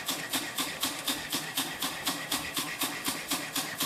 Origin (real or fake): fake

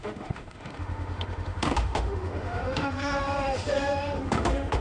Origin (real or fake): fake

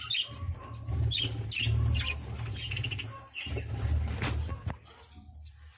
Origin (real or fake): real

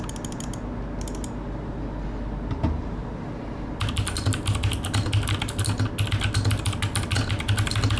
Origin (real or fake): real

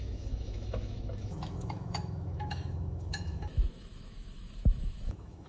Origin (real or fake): fake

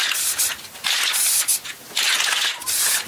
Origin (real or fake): real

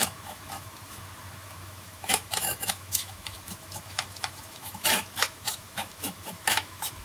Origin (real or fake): fake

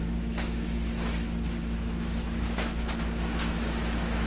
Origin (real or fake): fake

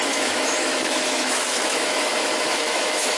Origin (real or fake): fake